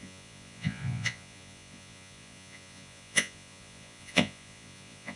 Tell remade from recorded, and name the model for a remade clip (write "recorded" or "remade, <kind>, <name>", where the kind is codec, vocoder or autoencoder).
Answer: remade, vocoder, Vocos